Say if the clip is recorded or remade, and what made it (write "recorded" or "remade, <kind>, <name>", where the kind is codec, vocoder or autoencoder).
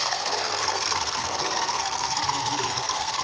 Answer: remade, codec, SNAC